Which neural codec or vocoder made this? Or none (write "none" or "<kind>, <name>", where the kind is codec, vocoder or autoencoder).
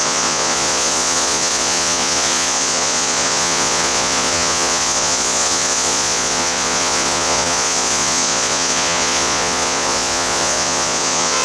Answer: vocoder, Vocos